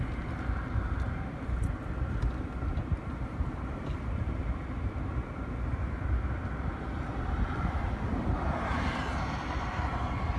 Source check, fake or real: real